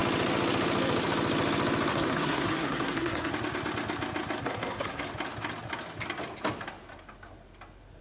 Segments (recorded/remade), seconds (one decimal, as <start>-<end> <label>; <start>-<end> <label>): 0.0-1.9 recorded; 1.9-3.3 remade; 3.3-4.4 recorded; 4.4-5.0 remade; 5.0-8.0 recorded